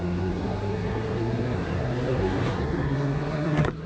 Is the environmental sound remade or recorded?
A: remade